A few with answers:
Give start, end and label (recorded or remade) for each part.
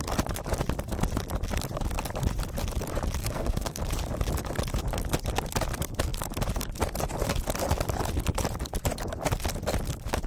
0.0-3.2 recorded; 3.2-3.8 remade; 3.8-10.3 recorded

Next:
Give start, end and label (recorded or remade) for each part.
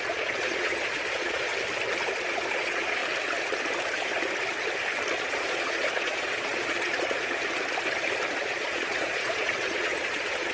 0.0-1.5 remade; 1.5-2.3 recorded; 2.3-3.0 remade; 3.0-5.2 recorded; 5.2-7.4 remade; 7.4-8.4 recorded; 8.4-10.5 remade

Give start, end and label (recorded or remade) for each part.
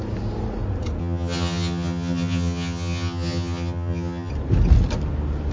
0.0-1.0 recorded; 1.0-4.3 remade; 4.3-5.5 recorded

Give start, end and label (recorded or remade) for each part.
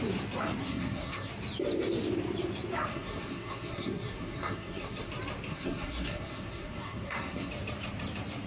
0.0-0.6 recorded; 0.6-1.3 remade; 1.3-2.9 recorded; 2.9-5.1 remade; 5.1-5.5 recorded; 5.5-7.5 remade; 7.5-8.5 recorded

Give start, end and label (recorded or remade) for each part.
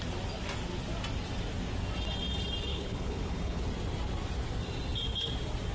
0.0-2.7 recorded; 2.7-3.6 remade; 3.6-5.7 recorded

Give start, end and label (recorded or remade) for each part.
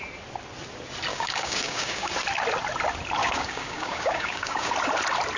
0.0-1.1 recorded; 1.1-2.1 remade; 2.1-3.2 recorded; 3.2-4.7 remade; 4.7-5.4 recorded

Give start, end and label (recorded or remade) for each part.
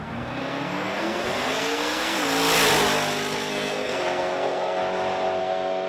0.0-2.2 remade; 2.2-3.5 recorded; 3.5-4.8 remade; 4.8-5.4 recorded; 5.4-5.9 remade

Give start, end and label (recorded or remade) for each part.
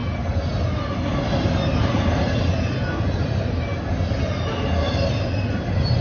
0.0-6.0 recorded